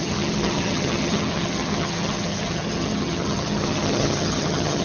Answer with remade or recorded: remade